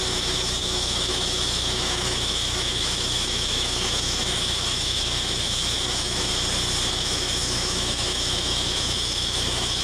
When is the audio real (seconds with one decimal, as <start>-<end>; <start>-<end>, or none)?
6.3-6.9